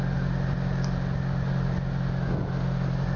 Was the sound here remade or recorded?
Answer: recorded